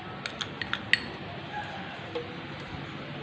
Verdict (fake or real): real